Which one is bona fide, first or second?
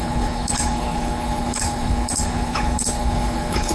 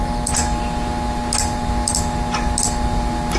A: second